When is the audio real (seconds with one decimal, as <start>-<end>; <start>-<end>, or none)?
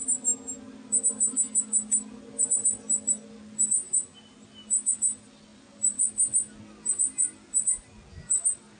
0.0-5.5; 6.1-8.8